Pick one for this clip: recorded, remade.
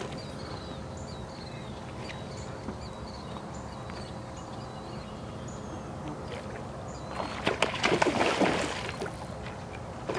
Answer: recorded